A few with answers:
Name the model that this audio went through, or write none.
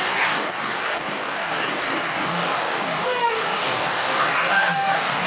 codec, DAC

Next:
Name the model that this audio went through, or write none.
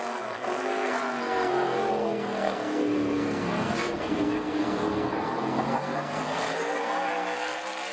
codec, SNAC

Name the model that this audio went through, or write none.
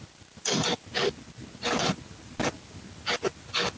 none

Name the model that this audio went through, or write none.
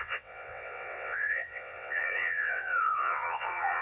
vocoder, WaveNeXt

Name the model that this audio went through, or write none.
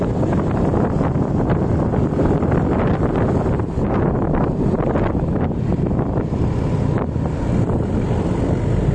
none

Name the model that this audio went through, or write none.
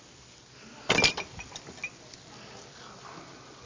none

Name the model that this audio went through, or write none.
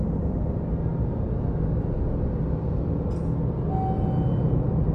none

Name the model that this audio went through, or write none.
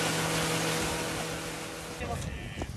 none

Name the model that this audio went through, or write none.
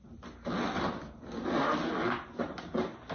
none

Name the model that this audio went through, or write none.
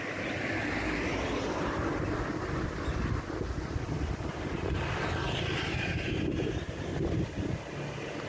none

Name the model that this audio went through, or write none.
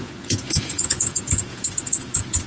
vocoder, Vocos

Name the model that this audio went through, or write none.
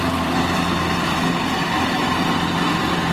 vocoder, BigVGAN v2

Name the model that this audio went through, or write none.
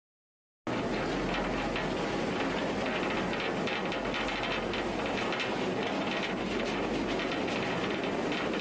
none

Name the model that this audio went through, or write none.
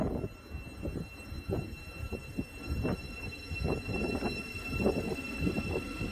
none